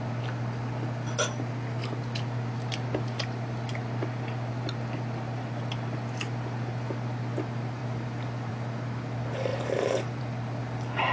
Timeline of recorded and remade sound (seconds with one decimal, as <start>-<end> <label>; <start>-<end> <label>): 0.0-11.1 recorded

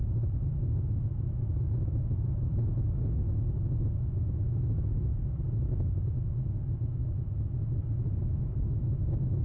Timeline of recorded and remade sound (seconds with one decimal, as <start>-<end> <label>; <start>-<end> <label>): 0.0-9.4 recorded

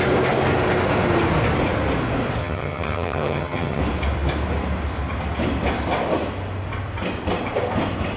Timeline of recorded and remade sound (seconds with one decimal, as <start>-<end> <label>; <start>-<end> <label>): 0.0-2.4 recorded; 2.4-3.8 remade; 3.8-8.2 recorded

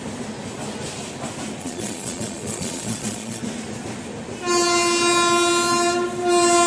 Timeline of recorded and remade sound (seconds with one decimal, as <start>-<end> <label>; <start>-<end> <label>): 0.0-1.6 recorded; 1.6-3.4 remade; 3.4-6.7 recorded

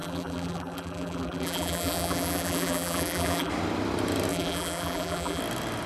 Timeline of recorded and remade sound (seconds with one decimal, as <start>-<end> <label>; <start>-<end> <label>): 0.0-3.5 remade; 3.5-4.3 recorded; 4.3-5.4 remade; 5.4-5.9 recorded

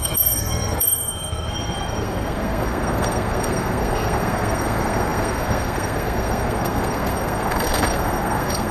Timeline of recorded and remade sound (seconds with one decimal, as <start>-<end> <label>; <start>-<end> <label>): 0.0-8.7 remade

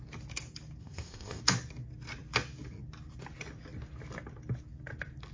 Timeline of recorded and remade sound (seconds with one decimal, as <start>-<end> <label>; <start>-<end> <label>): 0.0-0.8 recorded; 0.8-1.4 remade; 1.4-5.3 recorded